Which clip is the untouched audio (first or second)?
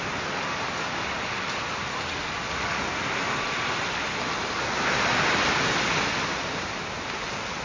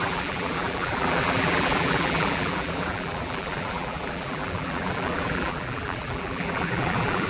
first